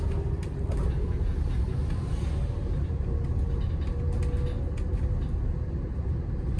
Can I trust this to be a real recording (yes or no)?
yes